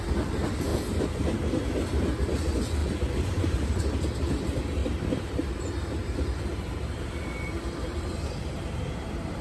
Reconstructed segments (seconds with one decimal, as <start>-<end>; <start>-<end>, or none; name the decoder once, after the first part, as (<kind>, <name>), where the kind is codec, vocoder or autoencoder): 2.8-3.7 (vocoder, BigVGAN v2); 4.8-8.8